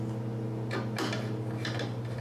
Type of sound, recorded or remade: recorded